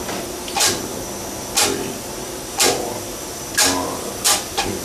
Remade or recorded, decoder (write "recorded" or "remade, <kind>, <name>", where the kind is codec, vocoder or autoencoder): recorded